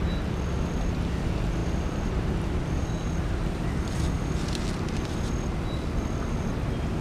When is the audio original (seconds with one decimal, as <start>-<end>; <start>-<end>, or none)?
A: 0.0-1.6; 3.7-7.0